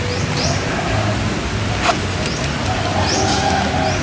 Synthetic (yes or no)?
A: no